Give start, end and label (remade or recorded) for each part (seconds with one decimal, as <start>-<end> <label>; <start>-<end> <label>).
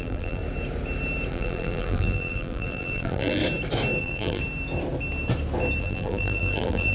0.0-0.4 remade; 0.4-1.3 recorded; 1.3-3.4 remade; 3.4-4.0 recorded; 4.0-4.4 remade; 4.4-5.8 recorded; 5.8-6.9 remade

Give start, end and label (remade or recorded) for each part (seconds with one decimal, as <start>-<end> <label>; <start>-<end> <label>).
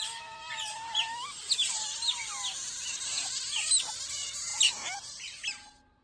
0.0-6.0 recorded